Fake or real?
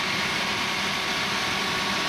real